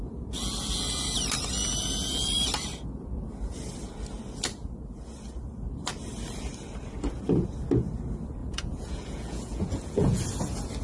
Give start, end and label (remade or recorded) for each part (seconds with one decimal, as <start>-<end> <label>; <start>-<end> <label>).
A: 0.0-8.4 recorded; 8.4-10.2 remade; 10.2-10.8 recorded

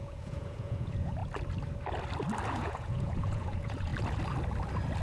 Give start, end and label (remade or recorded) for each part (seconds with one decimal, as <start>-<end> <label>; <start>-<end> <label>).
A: 0.0-1.2 remade; 1.2-2.5 recorded; 2.5-3.9 remade; 3.9-5.0 recorded

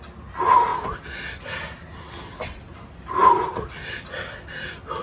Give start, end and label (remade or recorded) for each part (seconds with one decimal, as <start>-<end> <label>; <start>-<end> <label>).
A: 0.0-5.0 recorded

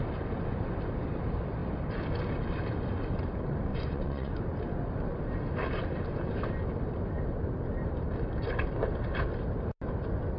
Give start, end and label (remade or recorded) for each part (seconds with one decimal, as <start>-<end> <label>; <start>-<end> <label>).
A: 0.0-3.7 recorded; 3.7-4.4 remade; 4.4-10.4 recorded

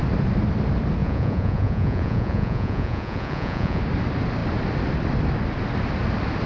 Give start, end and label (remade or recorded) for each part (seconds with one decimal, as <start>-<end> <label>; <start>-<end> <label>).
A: 0.0-1.0 recorded; 1.0-3.8 remade; 3.8-6.5 recorded